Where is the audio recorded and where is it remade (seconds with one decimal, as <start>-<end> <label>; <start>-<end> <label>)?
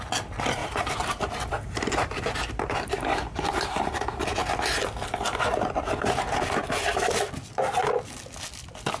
0.0-0.6 recorded; 0.6-3.5 remade; 3.5-9.0 recorded